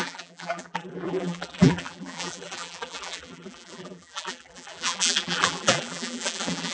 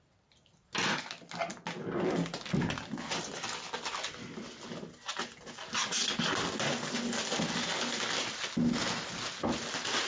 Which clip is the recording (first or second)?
second